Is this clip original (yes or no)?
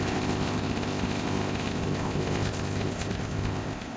no